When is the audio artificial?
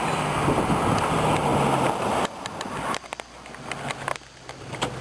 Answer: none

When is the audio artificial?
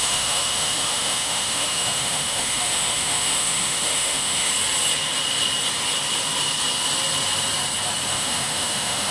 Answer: 0.0-4.5 (autoencoder, DAC-VAE); 8.1-9.1